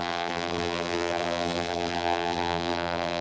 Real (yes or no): no